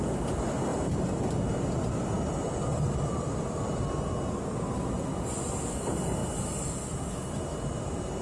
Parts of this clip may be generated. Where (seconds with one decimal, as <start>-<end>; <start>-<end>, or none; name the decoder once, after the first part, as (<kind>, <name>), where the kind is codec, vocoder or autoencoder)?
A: none